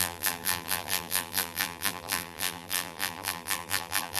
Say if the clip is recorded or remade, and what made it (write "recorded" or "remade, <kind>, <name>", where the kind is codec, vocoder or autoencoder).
remade, vocoder, BigVGAN v2